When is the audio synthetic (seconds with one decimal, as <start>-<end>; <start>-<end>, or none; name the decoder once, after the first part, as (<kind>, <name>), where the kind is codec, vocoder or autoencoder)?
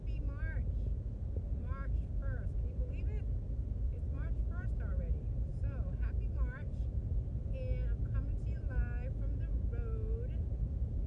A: 2.2-5.0 (vocoder, BigVGAN v2); 5.5-7.3